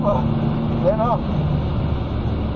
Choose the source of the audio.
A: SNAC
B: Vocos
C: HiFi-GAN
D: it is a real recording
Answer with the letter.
D